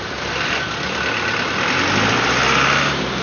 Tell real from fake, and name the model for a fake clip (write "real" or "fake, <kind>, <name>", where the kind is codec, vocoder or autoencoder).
real